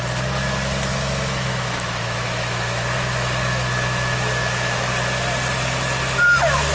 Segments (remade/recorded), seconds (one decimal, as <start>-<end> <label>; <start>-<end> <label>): 0.0-0.9 recorded; 0.9-4.9 remade; 4.9-6.7 recorded